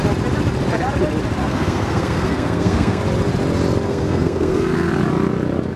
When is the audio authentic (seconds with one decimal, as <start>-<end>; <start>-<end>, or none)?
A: 0.0-1.4; 3.0-3.9; 4.9-5.8